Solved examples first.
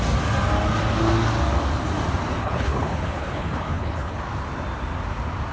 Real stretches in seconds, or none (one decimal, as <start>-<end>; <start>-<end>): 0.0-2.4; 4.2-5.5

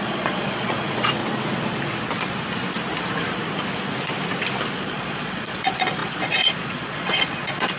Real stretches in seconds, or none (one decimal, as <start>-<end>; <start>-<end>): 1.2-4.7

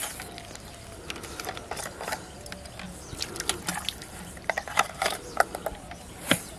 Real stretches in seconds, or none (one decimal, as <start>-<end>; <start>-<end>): 0.0-4.0; 5.6-6.6

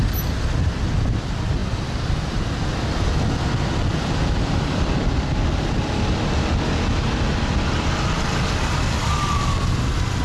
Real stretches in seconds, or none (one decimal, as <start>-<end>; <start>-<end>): 0.0-10.2

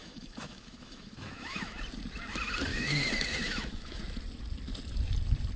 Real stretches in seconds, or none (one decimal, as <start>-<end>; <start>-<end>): 1.8-2.7; 4.0-5.6

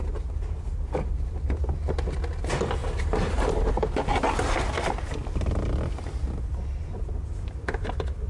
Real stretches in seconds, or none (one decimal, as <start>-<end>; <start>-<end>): 0.0-8.3

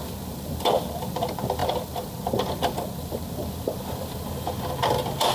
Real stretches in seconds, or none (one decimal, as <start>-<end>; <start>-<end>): none